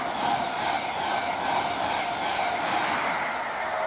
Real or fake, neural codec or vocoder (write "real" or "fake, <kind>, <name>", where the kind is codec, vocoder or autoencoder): real